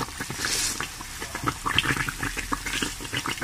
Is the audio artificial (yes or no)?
no